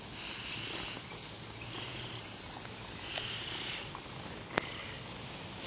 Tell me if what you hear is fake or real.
real